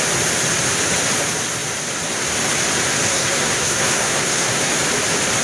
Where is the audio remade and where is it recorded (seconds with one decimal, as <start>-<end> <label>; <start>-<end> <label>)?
0.0-3.1 recorded; 3.1-4.7 remade; 4.7-5.4 recorded